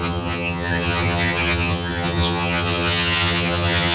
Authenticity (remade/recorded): remade